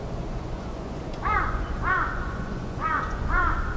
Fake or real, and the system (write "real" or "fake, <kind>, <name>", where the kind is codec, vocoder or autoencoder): fake, vocoder, Vocos